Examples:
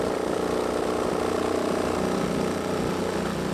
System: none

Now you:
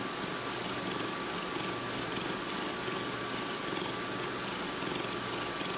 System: none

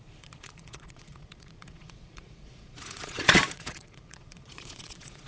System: vocoder, Vocos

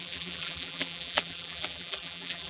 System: vocoder, BigVGAN v2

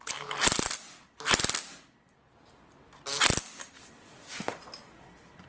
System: none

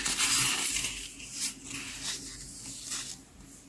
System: none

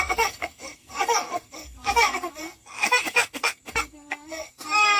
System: codec, SNAC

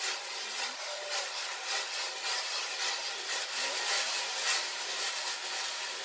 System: none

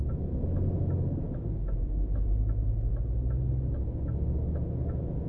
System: none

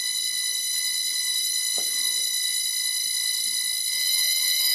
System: vocoder, BigVGAN v2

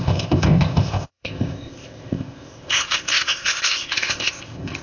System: codec, ZipCodec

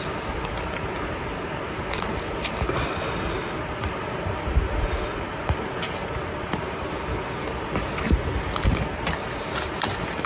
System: none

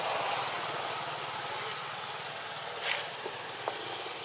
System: none